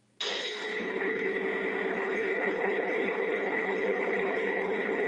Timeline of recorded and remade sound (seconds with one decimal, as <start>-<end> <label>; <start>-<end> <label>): 0.0-0.4 recorded; 0.4-1.4 remade; 1.4-1.9 recorded; 1.9-5.1 remade

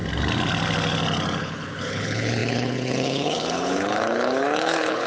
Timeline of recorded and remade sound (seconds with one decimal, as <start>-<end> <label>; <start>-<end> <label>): 0.0-1.4 recorded; 1.4-5.1 remade

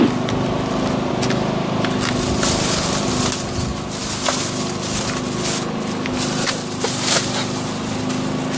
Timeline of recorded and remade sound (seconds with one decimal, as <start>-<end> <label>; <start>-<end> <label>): 0.0-8.6 recorded

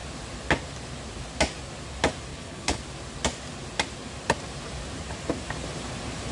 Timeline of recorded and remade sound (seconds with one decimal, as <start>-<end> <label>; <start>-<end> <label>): 0.0-2.3 recorded; 2.3-2.8 remade; 2.8-6.3 recorded

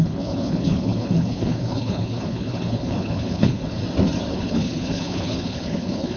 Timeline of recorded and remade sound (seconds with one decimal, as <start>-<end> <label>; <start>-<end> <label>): 0.0-3.8 remade; 3.8-4.3 recorded; 4.3-6.2 remade

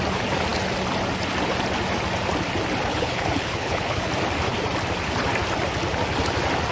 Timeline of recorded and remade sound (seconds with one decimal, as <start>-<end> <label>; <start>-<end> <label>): 0.0-2.9 recorded; 2.9-4.1 remade; 4.1-6.7 recorded

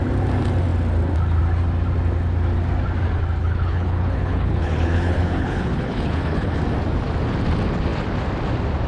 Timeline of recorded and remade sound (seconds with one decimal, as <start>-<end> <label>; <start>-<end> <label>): 0.0-3.4 recorded; 3.4-6.6 remade; 6.6-8.9 recorded

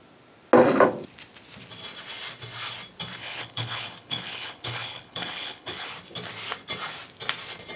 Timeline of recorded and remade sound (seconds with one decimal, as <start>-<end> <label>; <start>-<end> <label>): 0.0-3.2 recorded; 3.2-5.9 remade; 5.9-7.8 recorded